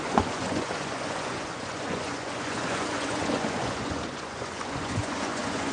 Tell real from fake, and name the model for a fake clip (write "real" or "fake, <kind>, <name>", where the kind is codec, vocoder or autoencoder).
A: fake, vocoder, Vocos